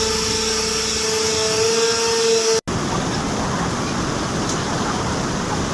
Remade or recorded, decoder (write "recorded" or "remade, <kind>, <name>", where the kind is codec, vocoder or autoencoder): recorded